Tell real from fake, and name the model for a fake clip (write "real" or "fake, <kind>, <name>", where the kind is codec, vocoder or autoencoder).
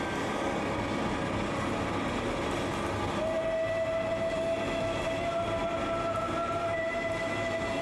real